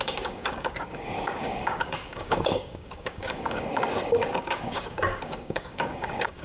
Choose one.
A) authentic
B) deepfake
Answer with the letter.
B